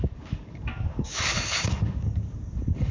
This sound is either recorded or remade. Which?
remade